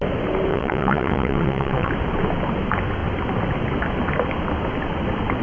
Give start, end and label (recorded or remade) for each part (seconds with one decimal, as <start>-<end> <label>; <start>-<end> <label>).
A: 0.0-0.5 recorded; 0.5-1.9 remade; 1.9-5.4 recorded